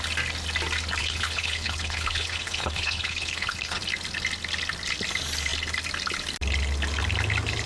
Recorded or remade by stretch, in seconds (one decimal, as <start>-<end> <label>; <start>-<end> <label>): 0.0-1.0 recorded; 1.0-3.8 remade; 3.8-7.7 recorded